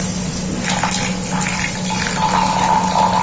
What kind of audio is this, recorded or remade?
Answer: recorded